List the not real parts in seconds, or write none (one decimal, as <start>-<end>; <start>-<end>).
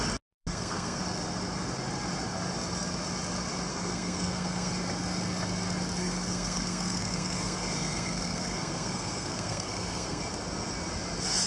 0.5-1.0; 3.7-4.7; 6.0-10.2